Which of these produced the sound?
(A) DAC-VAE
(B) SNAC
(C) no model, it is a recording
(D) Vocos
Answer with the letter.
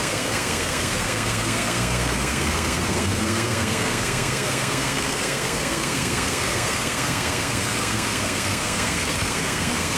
B